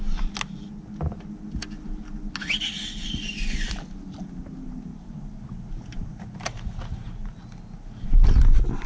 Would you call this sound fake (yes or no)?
no